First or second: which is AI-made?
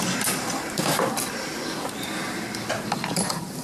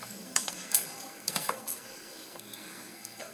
second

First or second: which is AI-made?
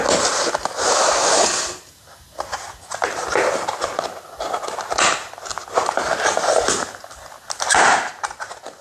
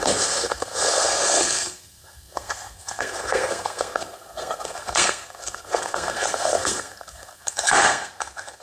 second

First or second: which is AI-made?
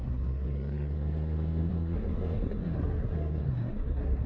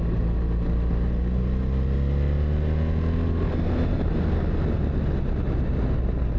first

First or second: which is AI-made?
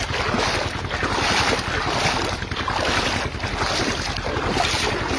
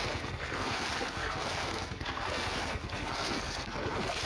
second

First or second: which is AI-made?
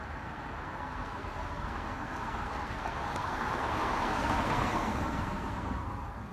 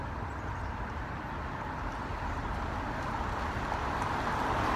first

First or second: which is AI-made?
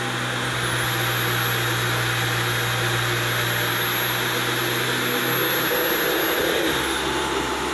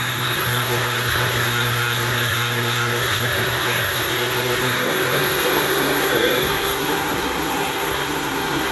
second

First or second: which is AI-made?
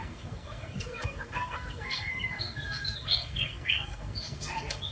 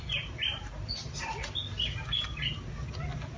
first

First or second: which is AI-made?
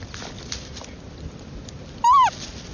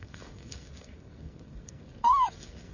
second